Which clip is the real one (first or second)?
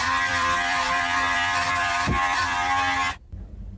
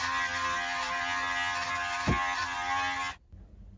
second